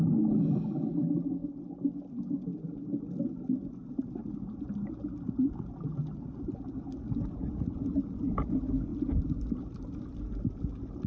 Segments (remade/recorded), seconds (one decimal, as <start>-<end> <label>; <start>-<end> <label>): 0.0-11.1 recorded